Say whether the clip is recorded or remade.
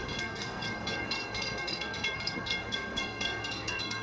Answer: remade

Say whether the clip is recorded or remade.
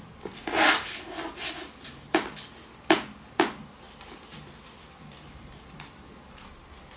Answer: recorded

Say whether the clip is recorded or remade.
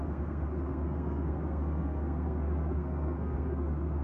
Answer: remade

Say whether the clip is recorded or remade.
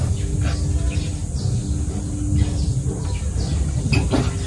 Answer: recorded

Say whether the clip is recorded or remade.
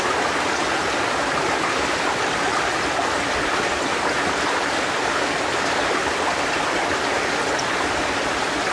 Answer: recorded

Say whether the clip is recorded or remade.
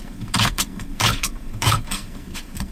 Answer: remade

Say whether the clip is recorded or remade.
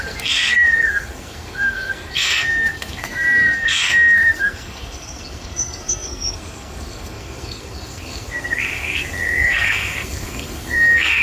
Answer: remade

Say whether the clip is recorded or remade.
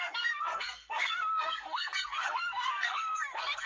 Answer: remade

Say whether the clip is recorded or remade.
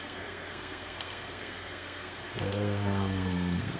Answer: remade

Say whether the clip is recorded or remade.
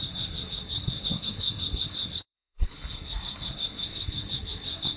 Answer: remade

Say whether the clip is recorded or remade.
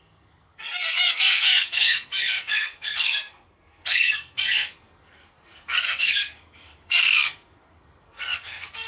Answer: remade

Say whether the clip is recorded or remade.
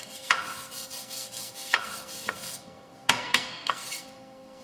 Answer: remade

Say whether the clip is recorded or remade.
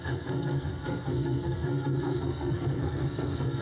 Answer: remade